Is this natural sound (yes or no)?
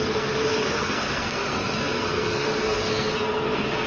no